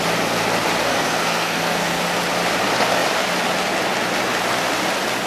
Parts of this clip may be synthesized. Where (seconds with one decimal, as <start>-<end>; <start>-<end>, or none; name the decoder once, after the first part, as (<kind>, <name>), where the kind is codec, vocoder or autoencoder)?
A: 0.9-2.0 (codec, SNAC)